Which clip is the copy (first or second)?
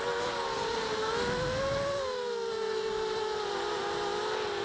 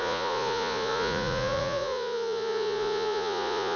second